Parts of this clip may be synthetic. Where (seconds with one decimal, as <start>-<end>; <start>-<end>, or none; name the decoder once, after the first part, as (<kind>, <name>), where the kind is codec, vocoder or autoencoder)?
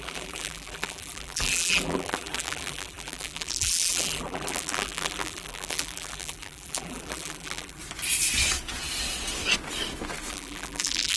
0.0-7.8 (vocoder, BigVGAN v2); 10.3-11.2